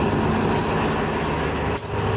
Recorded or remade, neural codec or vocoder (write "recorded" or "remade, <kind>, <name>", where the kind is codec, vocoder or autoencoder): recorded